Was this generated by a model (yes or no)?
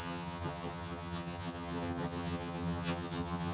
yes